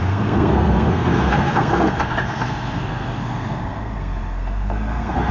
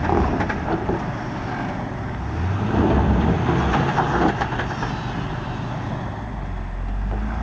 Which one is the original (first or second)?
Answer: second